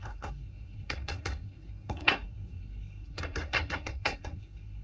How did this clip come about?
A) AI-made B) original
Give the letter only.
A